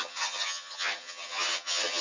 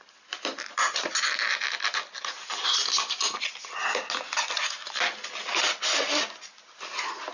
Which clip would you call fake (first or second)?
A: first